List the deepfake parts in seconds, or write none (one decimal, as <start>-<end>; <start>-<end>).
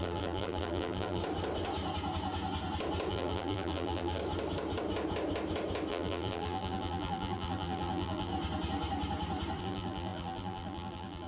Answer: 0.0-1.2; 3.1-4.2; 5.9-8.3; 9.6-11.3